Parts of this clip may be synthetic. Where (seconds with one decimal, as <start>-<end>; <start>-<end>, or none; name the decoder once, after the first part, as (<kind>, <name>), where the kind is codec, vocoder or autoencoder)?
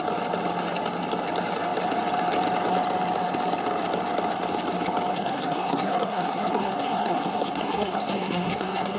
5.1-9.0 (codec, SNAC)